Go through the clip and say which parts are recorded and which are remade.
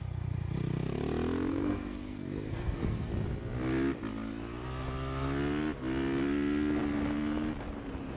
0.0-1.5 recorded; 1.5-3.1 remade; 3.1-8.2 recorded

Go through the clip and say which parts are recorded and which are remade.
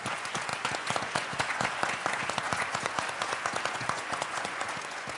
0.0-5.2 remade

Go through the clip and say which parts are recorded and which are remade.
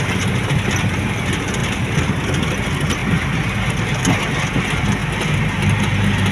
0.0-6.3 recorded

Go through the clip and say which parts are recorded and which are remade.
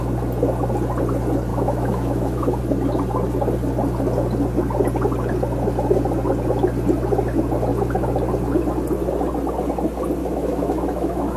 0.0-1.5 recorded; 1.5-2.6 remade; 2.6-10.2 recorded; 10.2-11.4 remade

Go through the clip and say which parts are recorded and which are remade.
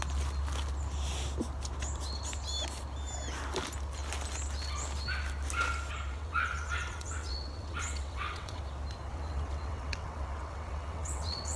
0.0-6.1 recorded; 6.1-8.6 remade; 8.6-9.1 recorded; 9.1-11.6 remade